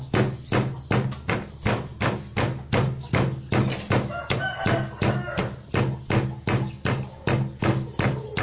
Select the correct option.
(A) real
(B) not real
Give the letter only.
A